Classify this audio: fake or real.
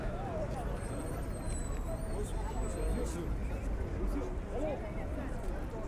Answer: real